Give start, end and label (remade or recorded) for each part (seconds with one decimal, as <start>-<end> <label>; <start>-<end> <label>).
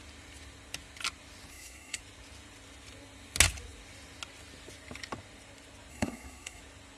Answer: 0.0-1.5 recorded; 1.5-2.0 remade; 2.0-5.9 recorded; 5.9-6.6 remade; 6.6-7.0 recorded